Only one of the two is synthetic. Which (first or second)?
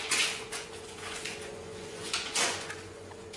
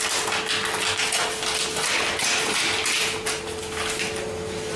first